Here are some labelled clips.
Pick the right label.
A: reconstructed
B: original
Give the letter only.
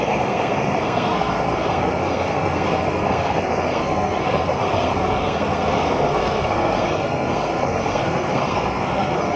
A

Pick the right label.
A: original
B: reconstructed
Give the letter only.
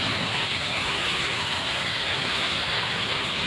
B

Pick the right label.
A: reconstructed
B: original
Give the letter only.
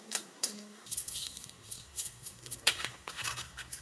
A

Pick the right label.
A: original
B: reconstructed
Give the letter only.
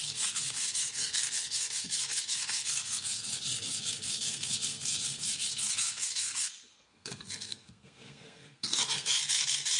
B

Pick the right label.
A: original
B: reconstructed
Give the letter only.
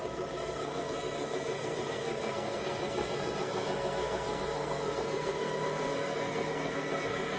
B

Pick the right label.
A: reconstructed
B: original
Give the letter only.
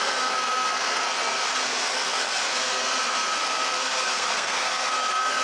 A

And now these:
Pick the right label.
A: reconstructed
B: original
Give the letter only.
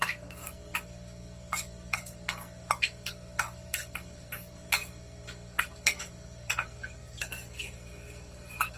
A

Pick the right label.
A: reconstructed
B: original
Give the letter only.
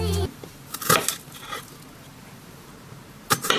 B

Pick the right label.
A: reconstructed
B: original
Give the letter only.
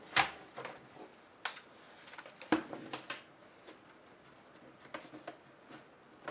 B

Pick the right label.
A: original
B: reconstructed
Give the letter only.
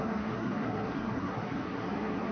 B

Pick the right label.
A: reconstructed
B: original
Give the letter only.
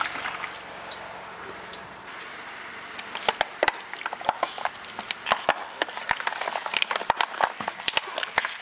B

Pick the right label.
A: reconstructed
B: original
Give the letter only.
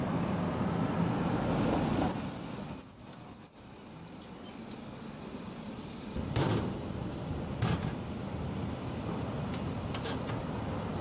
B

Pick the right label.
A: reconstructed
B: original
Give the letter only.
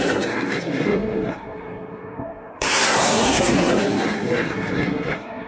A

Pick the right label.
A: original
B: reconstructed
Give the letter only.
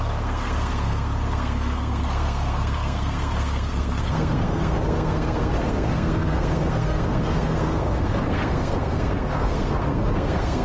B